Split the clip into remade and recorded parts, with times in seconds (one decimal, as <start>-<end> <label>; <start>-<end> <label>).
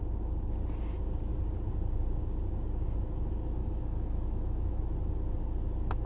0.0-3.6 recorded; 3.6-4.8 remade; 4.8-6.1 recorded